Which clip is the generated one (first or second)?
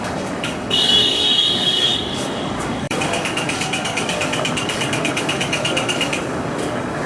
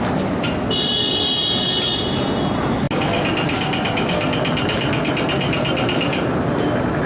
first